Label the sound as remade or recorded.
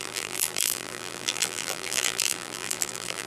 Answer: remade